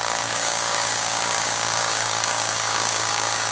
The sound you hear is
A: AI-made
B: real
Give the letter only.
A